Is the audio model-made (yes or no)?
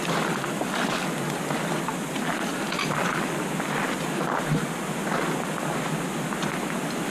no